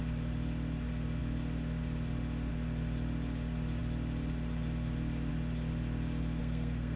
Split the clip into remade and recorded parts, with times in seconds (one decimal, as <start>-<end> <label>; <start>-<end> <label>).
0.0-6.4 recorded; 6.4-7.0 remade

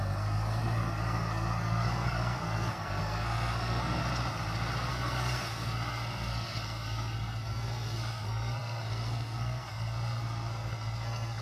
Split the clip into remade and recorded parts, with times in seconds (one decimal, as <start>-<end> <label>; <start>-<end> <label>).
0.0-4.0 remade; 4.0-4.9 recorded; 4.9-11.4 remade

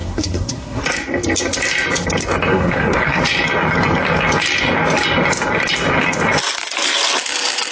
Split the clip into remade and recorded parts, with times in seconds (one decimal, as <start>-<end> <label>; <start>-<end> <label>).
0.0-0.8 remade; 0.8-2.5 recorded; 2.5-3.2 remade; 3.2-7.7 recorded

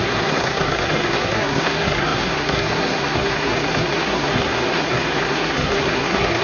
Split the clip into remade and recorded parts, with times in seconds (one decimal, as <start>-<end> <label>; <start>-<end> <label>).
0.0-6.4 remade